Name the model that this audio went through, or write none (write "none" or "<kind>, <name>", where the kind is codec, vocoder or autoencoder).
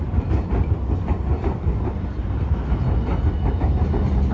none